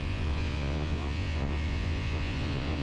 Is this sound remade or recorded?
remade